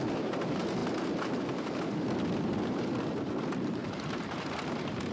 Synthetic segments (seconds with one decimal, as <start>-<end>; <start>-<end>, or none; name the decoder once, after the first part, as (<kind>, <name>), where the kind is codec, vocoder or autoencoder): 3.8-4.4 (vocoder, BigVGAN v2)